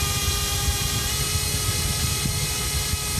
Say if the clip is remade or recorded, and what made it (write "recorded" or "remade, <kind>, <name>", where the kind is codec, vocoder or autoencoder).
recorded